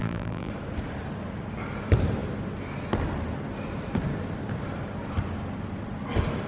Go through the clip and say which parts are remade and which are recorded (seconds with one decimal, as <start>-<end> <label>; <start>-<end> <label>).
0.0-0.5 remade; 0.5-6.5 recorded